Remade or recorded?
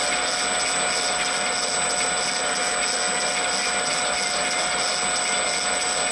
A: recorded